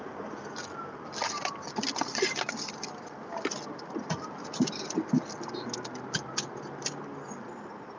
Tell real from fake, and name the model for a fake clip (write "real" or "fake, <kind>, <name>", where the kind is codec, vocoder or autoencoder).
real